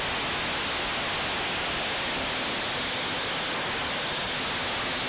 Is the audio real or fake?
real